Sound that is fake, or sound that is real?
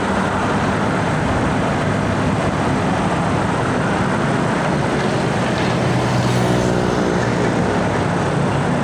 real